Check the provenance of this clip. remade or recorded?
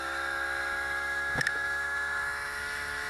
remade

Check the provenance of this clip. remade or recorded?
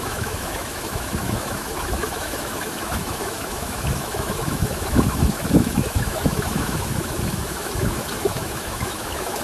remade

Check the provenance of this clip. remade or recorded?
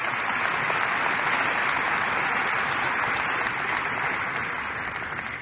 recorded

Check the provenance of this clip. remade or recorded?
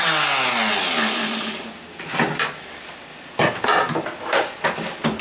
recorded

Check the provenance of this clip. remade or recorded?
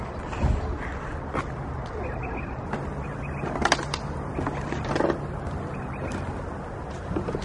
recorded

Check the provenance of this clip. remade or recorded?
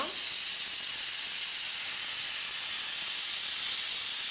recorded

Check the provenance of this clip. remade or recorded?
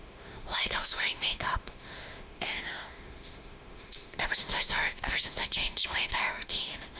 remade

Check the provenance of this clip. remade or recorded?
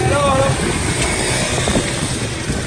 recorded